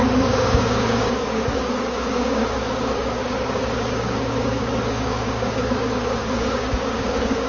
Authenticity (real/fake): fake